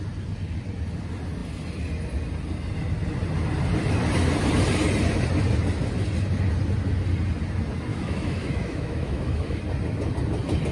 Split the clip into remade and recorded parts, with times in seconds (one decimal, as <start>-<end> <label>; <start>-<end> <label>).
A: 0.0-7.9 recorded; 7.9-9.6 remade; 9.6-10.7 recorded